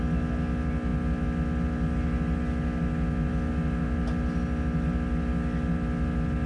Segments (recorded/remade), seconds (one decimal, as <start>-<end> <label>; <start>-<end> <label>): 0.0-6.5 recorded